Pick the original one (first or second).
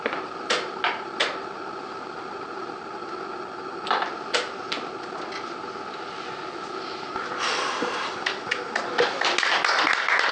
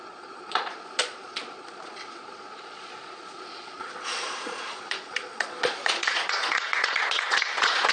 first